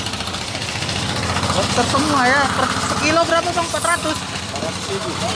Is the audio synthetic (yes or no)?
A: no